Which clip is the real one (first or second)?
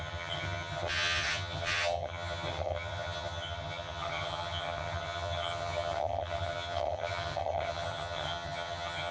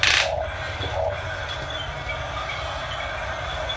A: second